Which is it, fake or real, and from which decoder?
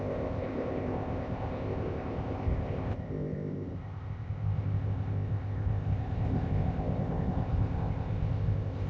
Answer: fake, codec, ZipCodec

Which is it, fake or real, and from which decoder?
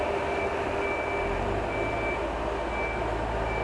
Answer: real